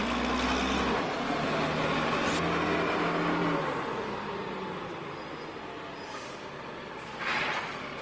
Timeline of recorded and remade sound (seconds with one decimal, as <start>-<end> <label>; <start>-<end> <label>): 0.0-8.0 recorded